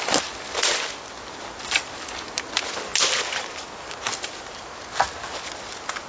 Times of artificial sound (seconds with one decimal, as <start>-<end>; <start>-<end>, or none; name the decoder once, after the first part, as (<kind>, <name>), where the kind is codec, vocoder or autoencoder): none